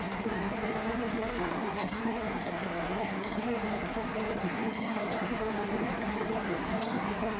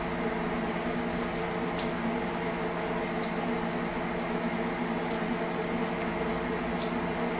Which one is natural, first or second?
second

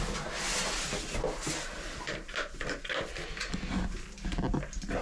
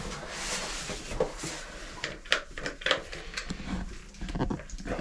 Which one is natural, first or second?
first